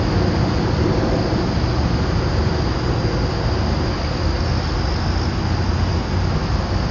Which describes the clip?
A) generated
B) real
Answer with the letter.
B